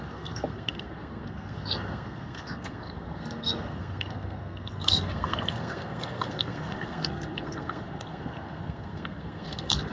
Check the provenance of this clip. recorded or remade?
remade